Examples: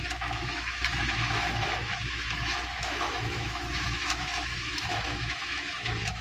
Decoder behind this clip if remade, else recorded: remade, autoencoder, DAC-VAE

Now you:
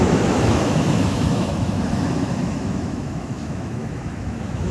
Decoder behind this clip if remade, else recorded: remade, autoencoder, DAC-VAE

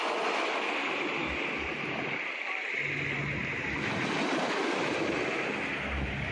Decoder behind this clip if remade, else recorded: recorded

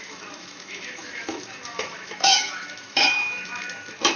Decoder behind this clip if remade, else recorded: remade, autoencoder, DAC-VAE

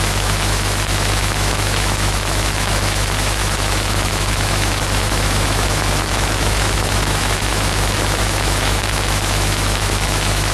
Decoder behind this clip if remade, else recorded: remade, autoencoder, DAC-VAE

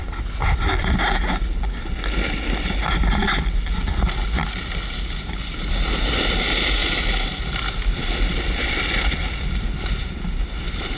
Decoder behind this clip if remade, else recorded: recorded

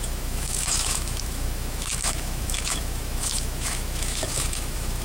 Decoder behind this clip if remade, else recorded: remade, autoencoder, DAC-VAE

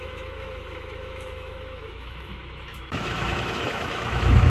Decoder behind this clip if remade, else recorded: remade, autoencoder, DAC-VAE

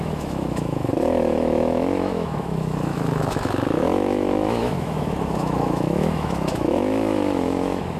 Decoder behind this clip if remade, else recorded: remade, autoencoder, DAC-VAE